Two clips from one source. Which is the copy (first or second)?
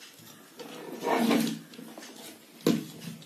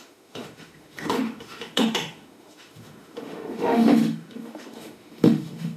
second